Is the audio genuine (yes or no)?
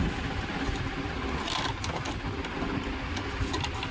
yes